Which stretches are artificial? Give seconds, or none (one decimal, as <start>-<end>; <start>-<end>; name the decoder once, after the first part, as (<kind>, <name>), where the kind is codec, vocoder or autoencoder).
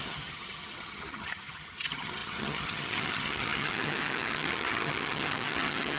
0.0-6.0 (vocoder, HiFi-GAN)